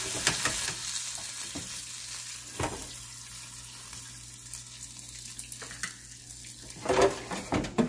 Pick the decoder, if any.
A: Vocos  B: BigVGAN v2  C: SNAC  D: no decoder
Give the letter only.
D